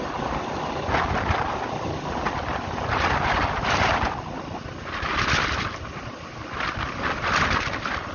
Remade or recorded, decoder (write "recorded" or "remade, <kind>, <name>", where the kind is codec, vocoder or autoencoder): recorded